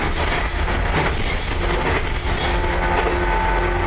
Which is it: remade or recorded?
recorded